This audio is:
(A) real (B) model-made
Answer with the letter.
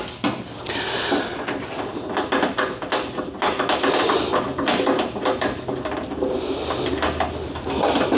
A